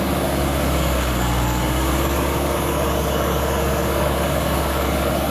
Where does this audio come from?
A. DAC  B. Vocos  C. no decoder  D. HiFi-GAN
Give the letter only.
A